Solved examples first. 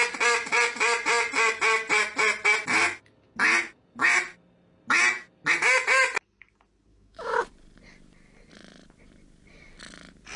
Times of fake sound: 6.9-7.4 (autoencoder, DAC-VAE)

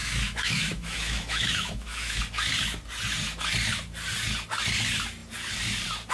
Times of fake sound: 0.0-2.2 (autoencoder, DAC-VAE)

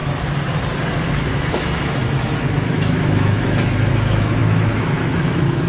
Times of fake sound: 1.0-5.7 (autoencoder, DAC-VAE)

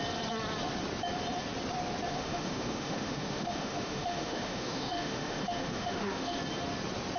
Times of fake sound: 2.1-6.4 (autoencoder, DAC-VAE)

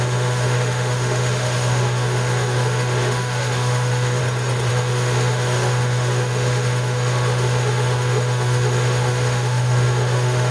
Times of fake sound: 0.0-4.2 (autoencoder, DAC-VAE); 4.7-10.5

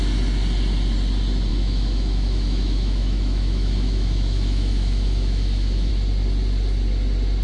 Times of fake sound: 1.5-5.9 (autoencoder, DAC-VAE)

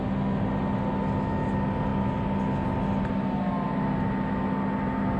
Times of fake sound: none

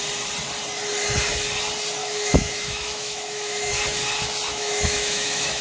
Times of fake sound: 2.0-3.7 (autoencoder, DAC-VAE); 4.5-5.6